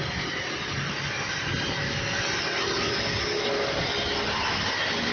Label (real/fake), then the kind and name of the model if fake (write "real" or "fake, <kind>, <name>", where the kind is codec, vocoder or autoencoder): real